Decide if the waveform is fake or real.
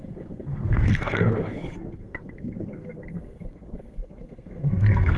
fake